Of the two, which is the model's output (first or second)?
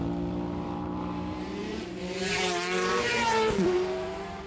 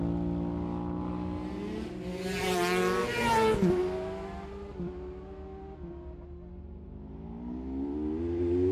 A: first